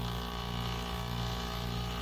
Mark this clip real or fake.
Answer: real